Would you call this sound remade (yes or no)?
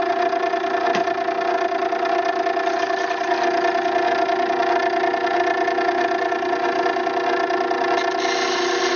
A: no